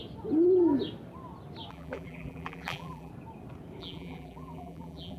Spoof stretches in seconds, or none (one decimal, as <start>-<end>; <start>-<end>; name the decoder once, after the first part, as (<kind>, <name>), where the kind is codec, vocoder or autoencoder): 1.7-3.1 (vocoder, BigVGAN v2); 3.8-5.2